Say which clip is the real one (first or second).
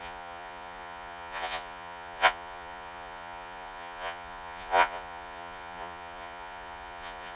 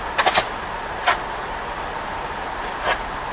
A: second